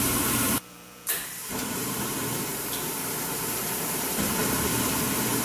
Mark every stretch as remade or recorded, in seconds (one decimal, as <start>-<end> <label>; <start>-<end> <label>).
0.0-5.4 remade